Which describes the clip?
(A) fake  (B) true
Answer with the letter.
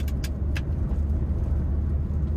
B